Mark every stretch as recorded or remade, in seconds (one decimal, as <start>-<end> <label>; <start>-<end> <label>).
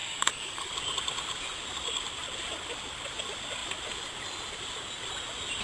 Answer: 0.0-0.7 remade; 0.7-5.6 recorded